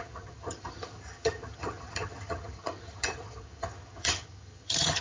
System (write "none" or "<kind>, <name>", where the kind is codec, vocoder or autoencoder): vocoder, HiFi-GAN